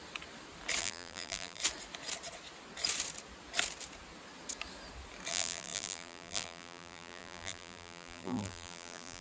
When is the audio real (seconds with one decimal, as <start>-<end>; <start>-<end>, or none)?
0.0-0.8; 1.6-5.3